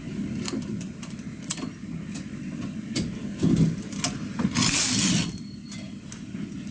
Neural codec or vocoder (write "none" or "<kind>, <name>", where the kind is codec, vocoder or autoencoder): none